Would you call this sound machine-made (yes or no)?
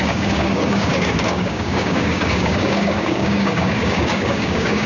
yes